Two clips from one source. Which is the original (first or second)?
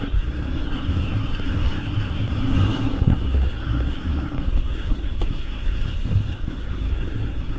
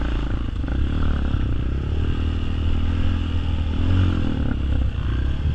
second